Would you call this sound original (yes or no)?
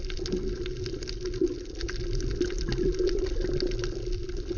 yes